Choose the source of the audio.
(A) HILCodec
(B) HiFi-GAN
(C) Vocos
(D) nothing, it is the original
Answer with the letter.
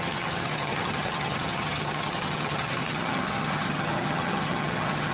B